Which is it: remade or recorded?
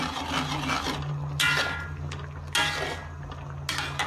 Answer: recorded